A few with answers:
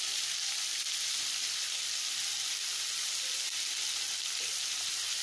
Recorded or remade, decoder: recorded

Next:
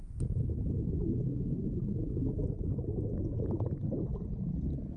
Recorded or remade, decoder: recorded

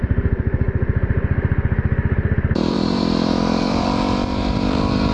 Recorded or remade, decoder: remade, vocoder, BigVGAN v2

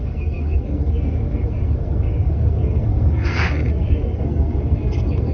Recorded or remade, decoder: remade, codec, SNAC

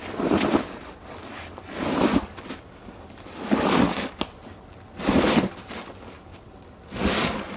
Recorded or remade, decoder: recorded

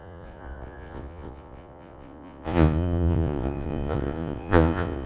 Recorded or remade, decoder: remade, vocoder, Vocos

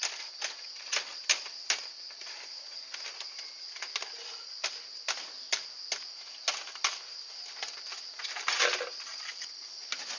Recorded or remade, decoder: recorded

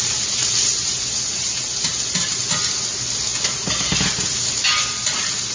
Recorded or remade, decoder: recorded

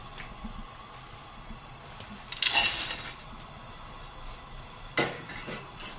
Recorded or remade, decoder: recorded